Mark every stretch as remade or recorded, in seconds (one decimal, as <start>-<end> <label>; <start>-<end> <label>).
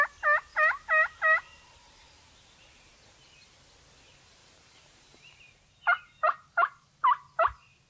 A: 0.0-0.5 recorded; 0.5-3.6 remade; 3.6-4.4 recorded; 4.4-7.0 remade; 7.0-7.9 recorded